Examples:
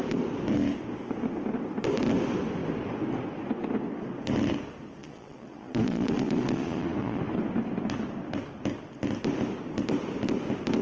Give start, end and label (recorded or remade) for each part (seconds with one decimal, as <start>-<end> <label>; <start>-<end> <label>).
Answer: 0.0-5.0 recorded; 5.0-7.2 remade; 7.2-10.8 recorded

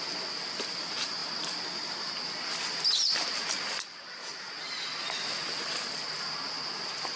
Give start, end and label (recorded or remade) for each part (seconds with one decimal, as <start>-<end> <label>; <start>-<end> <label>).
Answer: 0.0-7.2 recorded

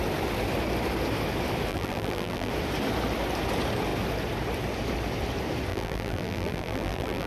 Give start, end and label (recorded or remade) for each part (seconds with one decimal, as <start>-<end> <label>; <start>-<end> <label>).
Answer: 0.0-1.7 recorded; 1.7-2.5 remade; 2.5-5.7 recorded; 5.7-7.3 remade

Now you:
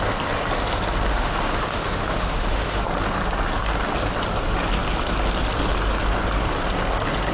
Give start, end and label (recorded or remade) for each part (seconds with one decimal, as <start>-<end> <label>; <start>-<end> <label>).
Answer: 0.0-1.1 recorded; 1.1-2.8 remade; 2.8-7.3 recorded

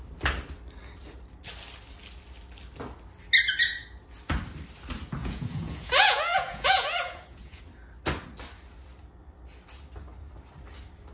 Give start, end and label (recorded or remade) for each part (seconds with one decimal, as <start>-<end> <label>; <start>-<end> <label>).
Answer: 0.0-5.2 recorded; 5.2-7.6 remade; 7.6-11.1 recorded